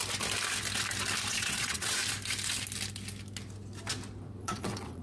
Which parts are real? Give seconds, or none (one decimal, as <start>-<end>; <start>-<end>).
0.0-1.3; 2.0-4.4